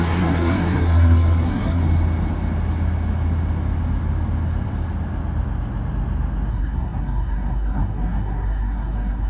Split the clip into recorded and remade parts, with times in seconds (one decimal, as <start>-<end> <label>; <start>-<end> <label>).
0.0-1.8 remade; 1.8-6.5 recorded; 6.5-9.3 remade